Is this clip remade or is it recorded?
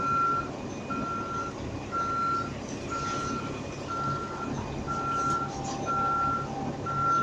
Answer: recorded